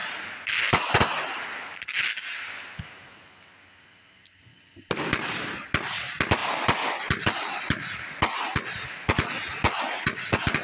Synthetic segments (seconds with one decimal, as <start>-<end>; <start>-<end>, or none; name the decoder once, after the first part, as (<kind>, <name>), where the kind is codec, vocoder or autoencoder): none